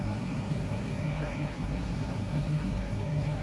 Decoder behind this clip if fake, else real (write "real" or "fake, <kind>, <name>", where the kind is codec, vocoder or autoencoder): fake, codec, SNAC